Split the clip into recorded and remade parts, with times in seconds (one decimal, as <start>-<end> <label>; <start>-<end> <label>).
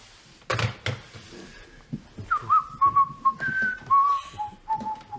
0.0-5.2 recorded